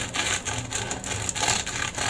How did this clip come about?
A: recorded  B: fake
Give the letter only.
A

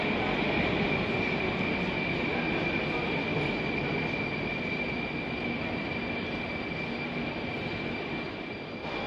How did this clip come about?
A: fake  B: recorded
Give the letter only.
B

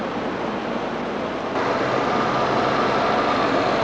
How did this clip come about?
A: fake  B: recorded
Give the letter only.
B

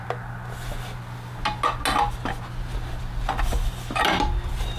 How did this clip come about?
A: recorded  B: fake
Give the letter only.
A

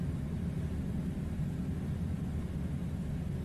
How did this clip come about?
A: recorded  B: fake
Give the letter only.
A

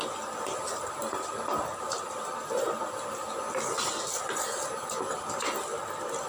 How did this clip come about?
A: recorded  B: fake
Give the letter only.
A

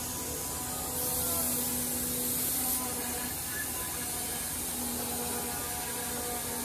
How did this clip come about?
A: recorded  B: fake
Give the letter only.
A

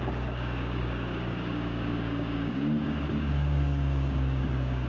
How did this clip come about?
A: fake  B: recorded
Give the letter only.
A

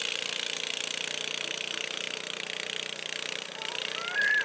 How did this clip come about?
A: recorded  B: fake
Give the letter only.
A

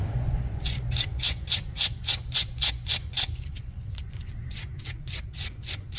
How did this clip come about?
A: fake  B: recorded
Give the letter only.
A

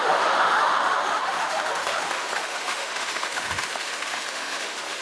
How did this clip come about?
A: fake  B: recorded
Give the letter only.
A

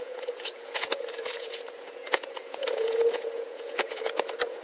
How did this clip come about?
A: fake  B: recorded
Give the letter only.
A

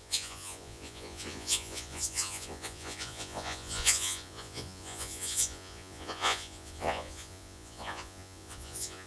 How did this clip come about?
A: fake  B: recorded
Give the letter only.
A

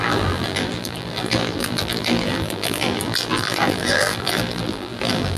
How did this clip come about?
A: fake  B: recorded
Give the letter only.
A